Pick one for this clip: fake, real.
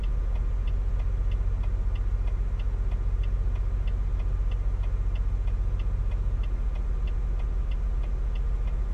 real